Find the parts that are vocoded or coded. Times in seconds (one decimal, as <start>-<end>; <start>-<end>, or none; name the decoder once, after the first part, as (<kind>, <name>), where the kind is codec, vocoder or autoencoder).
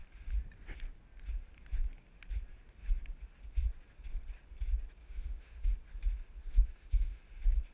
5.0-5.7 (autoencoder, DAC-VAE); 6.4-7.2